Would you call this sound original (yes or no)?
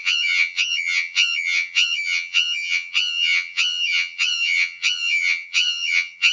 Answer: no